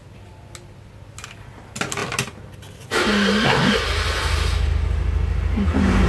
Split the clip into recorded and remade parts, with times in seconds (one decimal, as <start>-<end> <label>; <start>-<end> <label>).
0.0-6.1 recorded